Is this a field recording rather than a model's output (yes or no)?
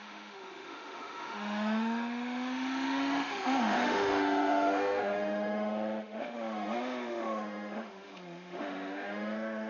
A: no